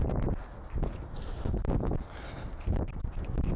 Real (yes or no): yes